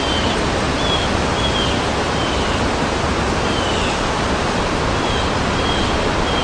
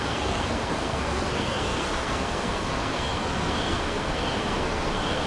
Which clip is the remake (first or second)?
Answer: second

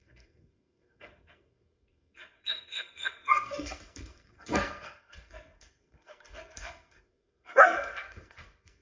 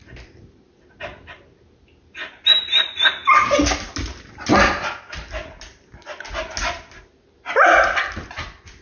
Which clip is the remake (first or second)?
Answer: first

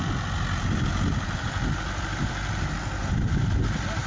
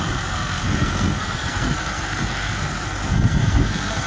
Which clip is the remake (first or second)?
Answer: second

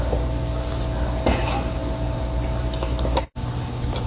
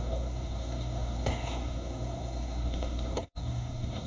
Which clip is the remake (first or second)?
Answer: second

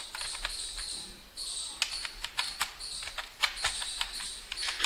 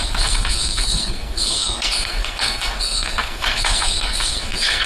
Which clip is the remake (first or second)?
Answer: second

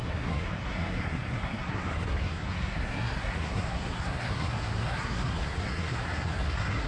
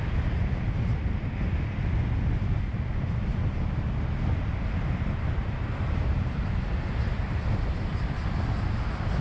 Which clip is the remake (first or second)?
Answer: first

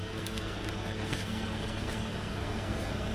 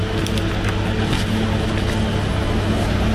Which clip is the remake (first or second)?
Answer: first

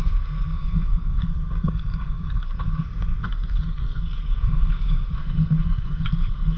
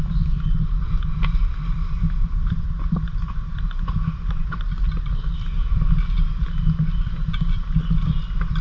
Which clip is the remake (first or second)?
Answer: first